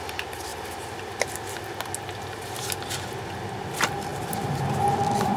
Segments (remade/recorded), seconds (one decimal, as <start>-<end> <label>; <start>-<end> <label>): 0.0-4.1 recorded; 4.1-5.4 remade